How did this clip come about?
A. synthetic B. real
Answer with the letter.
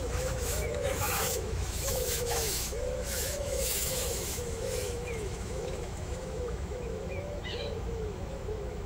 A